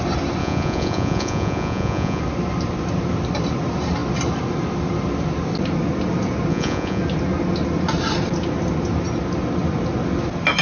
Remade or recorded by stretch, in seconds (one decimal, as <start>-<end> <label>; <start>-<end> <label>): 0.0-0.4 recorded; 0.4-2.2 remade; 2.2-6.5 recorded; 6.5-7.0 remade; 7.0-10.6 recorded